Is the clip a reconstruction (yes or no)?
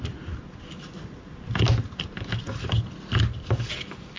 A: no